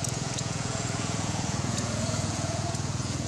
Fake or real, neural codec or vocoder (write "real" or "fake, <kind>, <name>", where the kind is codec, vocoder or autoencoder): fake, vocoder, Vocos